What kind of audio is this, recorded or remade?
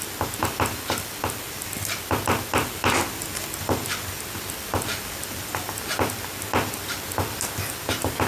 recorded